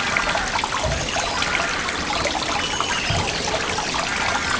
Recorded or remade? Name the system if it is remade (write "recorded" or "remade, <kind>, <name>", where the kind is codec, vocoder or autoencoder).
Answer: recorded